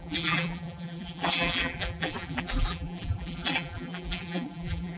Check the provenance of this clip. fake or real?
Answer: fake